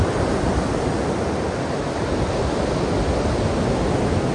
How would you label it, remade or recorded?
recorded